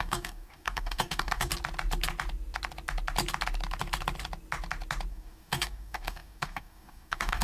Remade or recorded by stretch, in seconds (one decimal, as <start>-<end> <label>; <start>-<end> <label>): 0.0-1.5 remade; 1.5-5.1 recorded; 5.1-7.4 remade